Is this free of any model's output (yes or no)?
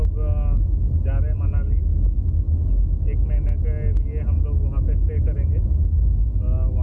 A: yes